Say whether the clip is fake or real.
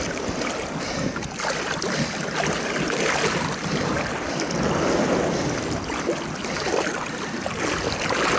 real